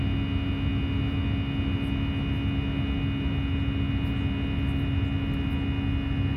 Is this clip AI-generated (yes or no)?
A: no